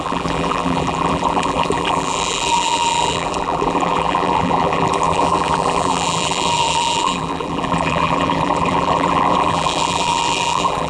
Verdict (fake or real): fake